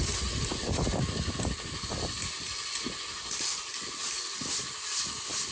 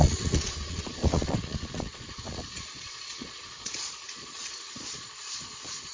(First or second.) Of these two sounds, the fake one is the second